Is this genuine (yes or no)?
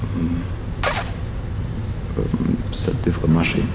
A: yes